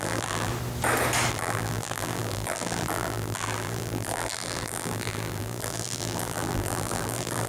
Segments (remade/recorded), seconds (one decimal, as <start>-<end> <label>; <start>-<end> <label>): 0.0-0.5 remade; 0.5-1.3 recorded; 1.3-7.5 remade